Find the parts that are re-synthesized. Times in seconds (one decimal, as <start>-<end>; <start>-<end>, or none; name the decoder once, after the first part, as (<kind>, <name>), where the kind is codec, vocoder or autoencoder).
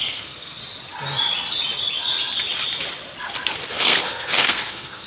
0.0-0.6 (codec, SNAC); 3.7-5.1